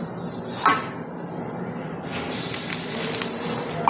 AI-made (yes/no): no